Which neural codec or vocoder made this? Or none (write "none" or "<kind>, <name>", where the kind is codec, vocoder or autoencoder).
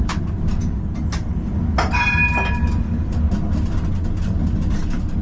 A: none